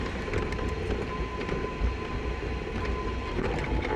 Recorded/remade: recorded